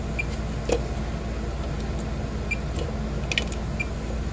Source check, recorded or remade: recorded